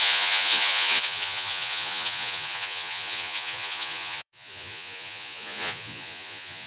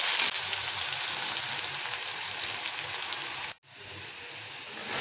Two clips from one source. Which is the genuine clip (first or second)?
second